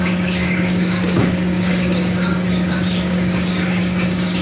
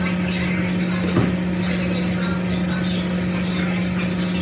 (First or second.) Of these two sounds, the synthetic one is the first